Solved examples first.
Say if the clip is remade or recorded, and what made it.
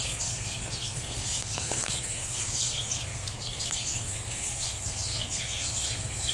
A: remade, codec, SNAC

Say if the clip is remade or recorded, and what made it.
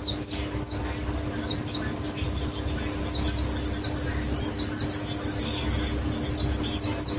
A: recorded